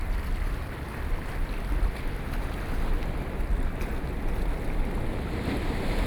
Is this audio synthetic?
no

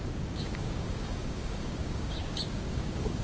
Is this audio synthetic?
yes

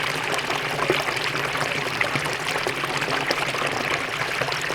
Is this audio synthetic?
no